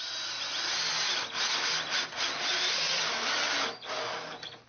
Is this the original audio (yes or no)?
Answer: yes